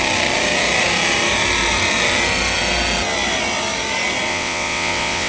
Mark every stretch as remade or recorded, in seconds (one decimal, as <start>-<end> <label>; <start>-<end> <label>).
0.0-4.3 recorded; 4.3-5.3 remade